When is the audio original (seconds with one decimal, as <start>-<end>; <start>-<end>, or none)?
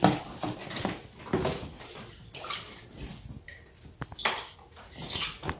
0.0-0.6; 1.8-5.6